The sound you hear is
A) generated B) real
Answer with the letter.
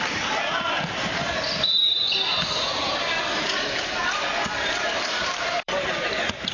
A